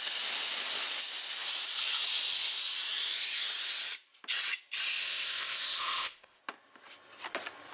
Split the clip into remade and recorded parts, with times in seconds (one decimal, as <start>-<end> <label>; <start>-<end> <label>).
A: 0.0-5.0 recorded; 5.0-6.4 remade; 6.4-7.7 recorded